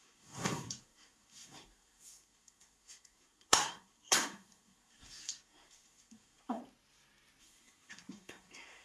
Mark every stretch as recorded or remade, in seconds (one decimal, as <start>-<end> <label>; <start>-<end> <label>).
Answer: 0.0-6.6 remade; 6.6-7.4 recorded; 7.4-8.8 remade